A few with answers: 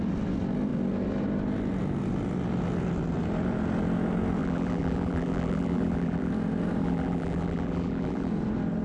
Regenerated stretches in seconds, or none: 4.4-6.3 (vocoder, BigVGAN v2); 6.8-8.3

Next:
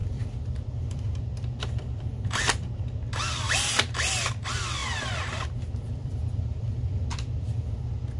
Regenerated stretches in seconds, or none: 0.0-2.3 (vocoder, BigVGAN v2); 4.8-7.7

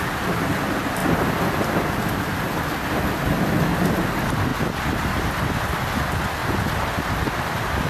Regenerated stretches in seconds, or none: 1.0-3.0 (vocoder, BigVGAN v2)

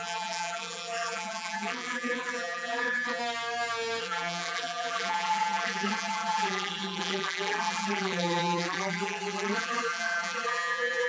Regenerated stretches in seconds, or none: 0.0-3.2 (vocoder, BigVGAN v2); 4.0-11.1

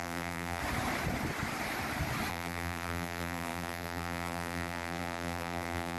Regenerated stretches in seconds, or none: 0.0-0.6 (vocoder, BigVGAN v2); 2.3-6.0

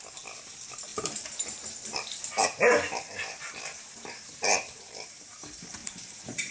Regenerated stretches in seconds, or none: 0.0-6.5 (vocoder, BigVGAN v2)